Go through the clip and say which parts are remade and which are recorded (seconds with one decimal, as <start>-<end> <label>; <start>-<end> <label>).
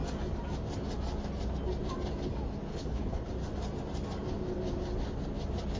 0.0-2.7 recorded; 2.7-3.3 remade; 3.3-5.8 recorded